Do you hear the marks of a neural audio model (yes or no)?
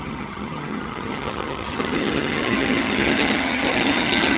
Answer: yes